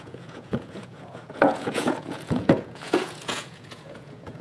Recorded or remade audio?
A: remade